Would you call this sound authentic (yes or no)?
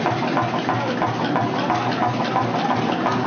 yes